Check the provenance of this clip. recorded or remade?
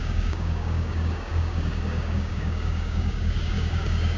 remade